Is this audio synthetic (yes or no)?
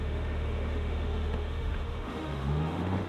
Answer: yes